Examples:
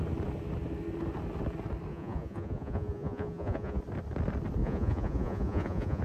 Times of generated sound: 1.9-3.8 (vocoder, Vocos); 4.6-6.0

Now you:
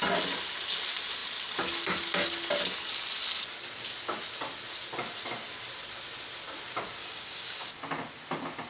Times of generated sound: 7.0-7.7 (codec, DAC)